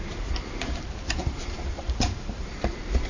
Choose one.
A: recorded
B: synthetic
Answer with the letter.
B